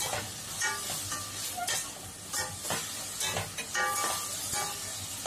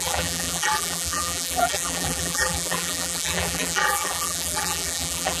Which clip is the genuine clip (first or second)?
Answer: first